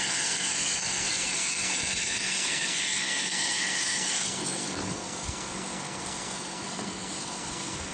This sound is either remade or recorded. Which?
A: remade